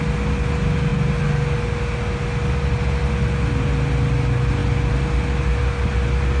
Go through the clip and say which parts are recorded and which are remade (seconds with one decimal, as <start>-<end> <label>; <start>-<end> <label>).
0.0-6.4 recorded